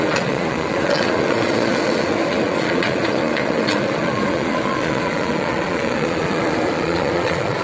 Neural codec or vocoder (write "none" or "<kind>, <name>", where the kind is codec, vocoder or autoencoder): vocoder, Vocos